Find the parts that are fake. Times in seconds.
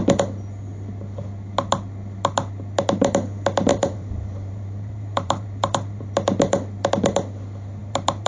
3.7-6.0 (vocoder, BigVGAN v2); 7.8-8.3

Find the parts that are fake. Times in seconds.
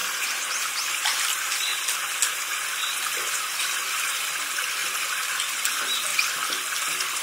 0.0-1.7 (vocoder, BigVGAN v2); 2.9-4.8; 5.3-6.1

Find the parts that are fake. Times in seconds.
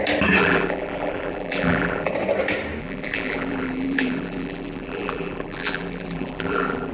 0.4-2.1 (vocoder, BigVGAN v2); 2.8-6.9